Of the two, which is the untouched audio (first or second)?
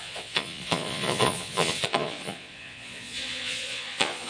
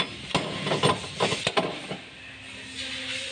second